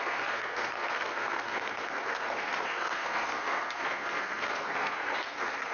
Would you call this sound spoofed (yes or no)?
yes